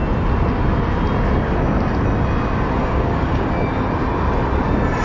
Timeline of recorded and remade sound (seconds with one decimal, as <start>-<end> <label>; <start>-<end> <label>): 0.0-2.8 recorded; 2.8-3.5 remade; 3.5-5.0 recorded